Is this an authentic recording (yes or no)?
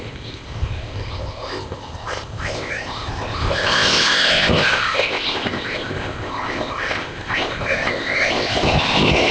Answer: no